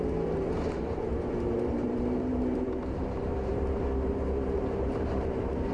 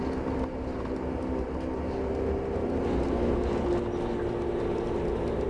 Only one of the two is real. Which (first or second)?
second